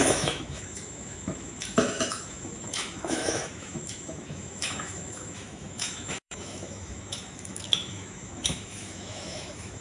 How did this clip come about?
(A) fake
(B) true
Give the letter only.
A